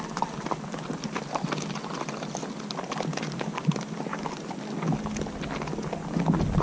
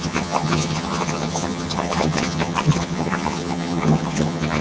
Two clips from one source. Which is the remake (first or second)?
second